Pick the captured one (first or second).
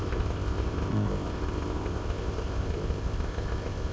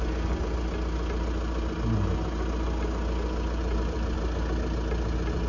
second